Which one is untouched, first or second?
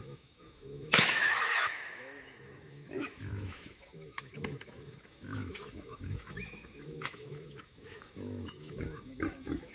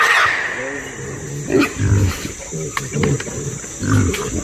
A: second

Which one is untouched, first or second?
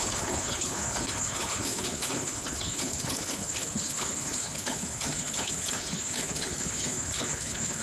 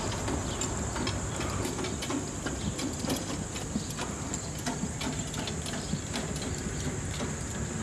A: second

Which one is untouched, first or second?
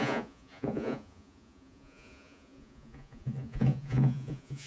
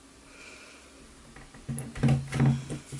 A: second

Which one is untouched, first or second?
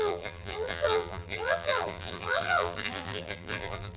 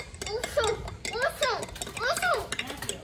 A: second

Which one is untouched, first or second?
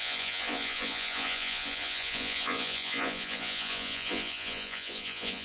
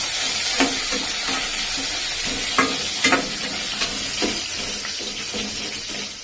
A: second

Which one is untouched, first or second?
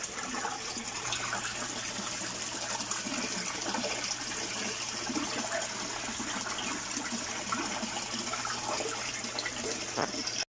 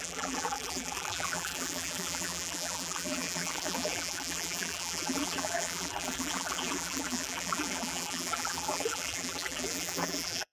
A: first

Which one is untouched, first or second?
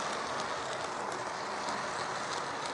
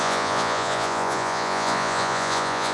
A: first